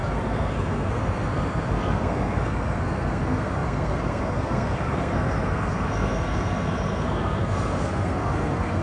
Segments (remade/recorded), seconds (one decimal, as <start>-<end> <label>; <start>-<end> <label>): 0.0-8.8 remade

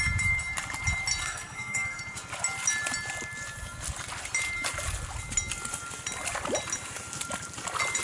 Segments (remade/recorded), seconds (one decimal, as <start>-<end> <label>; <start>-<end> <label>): 0.0-1.2 recorded; 1.2-2.0 remade; 2.0-8.0 recorded

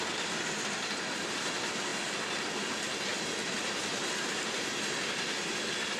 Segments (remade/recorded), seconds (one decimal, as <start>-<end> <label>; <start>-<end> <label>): 0.0-6.0 recorded

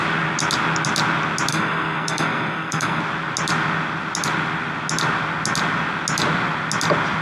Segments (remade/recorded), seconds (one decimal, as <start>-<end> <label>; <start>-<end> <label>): 0.0-1.5 recorded; 1.5-3.0 remade; 3.0-7.2 recorded